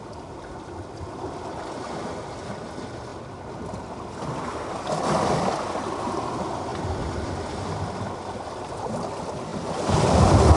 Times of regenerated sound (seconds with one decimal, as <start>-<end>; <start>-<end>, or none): none